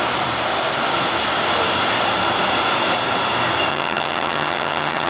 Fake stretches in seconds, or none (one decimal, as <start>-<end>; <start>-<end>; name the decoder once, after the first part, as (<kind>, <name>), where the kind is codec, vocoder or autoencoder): 3.7-5.1 (vocoder, HiFi-GAN)